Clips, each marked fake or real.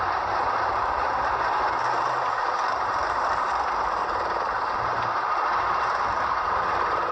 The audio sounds fake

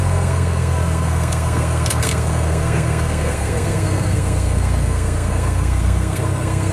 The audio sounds fake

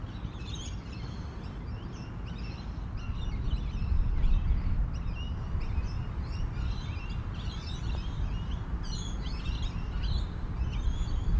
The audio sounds real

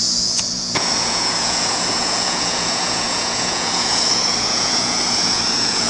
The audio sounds fake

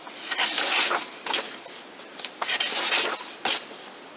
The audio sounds real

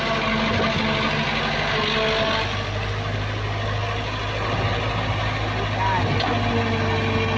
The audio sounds real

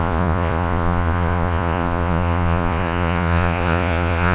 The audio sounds fake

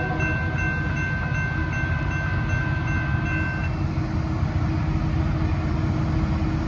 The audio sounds real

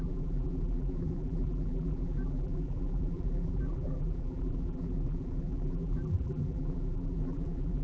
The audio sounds fake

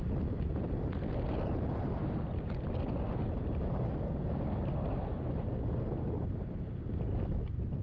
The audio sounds real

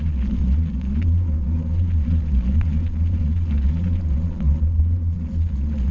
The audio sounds fake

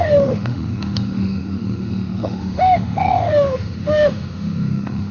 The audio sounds fake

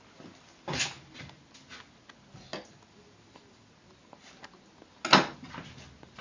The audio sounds real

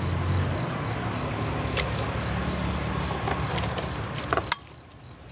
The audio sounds real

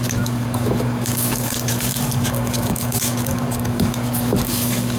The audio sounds fake